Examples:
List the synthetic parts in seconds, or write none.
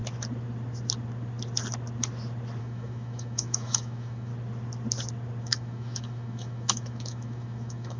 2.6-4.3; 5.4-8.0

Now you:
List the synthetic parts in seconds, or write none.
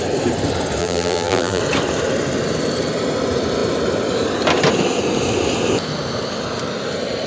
0.8-1.6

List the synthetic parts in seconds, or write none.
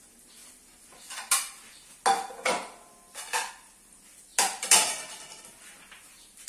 none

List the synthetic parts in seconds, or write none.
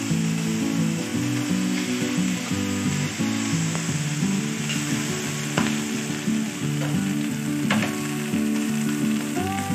none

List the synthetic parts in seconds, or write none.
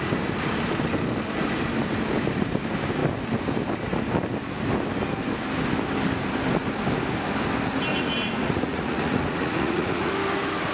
7.9-10.1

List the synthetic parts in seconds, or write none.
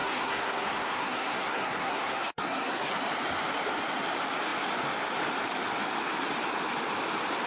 0.0-2.9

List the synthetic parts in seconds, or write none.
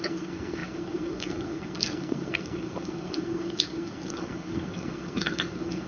0.0-5.9